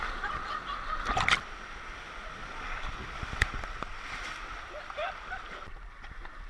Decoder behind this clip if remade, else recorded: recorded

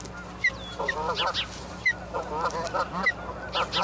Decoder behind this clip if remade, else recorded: recorded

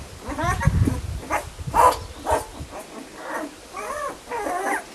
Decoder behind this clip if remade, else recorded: recorded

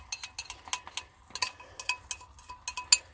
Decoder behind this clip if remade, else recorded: recorded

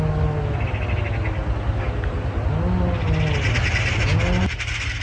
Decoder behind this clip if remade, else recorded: recorded